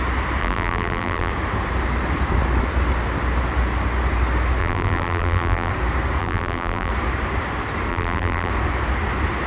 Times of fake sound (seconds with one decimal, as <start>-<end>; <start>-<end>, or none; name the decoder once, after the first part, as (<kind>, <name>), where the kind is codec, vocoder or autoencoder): 0.4-1.3 (vocoder, BigVGAN v2); 4.6-5.7; 6.2-6.9; 7.9-8.5

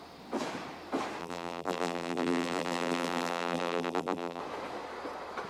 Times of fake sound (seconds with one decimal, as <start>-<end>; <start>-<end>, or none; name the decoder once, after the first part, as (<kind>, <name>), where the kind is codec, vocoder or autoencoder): 1.2-4.4 (vocoder, BigVGAN v2)

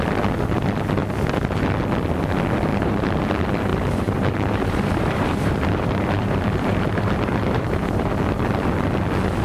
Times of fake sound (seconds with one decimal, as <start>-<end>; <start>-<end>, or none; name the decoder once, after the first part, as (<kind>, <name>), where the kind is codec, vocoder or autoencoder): 2.7-3.3 (vocoder, BigVGAN v2); 3.7-8.1

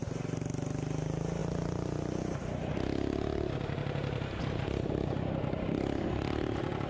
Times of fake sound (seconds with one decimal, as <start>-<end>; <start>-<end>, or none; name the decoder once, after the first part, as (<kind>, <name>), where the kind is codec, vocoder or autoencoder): none

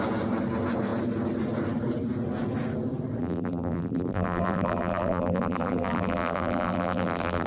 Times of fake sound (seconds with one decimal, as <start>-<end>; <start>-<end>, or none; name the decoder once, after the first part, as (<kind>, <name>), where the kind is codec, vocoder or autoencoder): 3.2-7.5 (vocoder, BigVGAN v2)

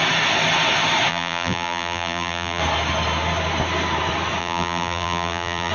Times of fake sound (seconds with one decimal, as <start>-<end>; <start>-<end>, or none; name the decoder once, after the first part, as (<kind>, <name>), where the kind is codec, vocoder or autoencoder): 1.1-2.6 (vocoder, BigVGAN v2); 4.4-5.7